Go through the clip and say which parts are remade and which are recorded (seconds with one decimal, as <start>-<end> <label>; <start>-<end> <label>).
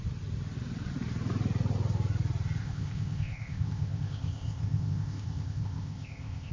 0.0-2.6 recorded; 2.6-6.5 remade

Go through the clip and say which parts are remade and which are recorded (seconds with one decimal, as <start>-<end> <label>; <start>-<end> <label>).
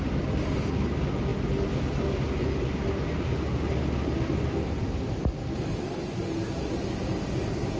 0.0-7.8 recorded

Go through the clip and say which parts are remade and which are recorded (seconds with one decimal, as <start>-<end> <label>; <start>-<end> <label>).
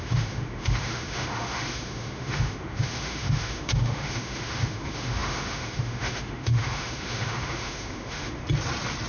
0.0-8.4 remade; 8.4-9.1 recorded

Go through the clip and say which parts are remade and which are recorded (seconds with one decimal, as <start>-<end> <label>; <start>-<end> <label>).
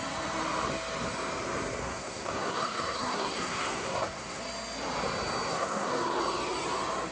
0.0-1.8 recorded; 1.8-4.4 remade; 4.4-5.5 recorded; 5.5-6.2 remade; 6.2-7.1 recorded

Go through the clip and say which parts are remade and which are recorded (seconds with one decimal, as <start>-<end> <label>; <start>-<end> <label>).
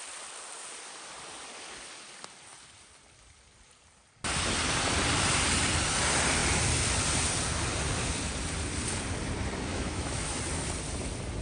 0.0-9.7 recorded; 9.7-10.4 remade; 10.4-11.4 recorded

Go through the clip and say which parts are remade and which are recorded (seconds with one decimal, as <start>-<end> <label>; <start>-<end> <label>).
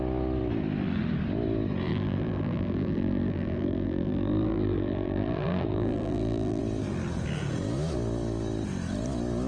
0.0-1.9 recorded; 1.9-6.6 remade; 6.6-9.5 recorded